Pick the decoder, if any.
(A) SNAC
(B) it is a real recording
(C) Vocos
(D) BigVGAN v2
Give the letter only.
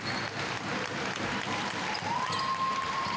B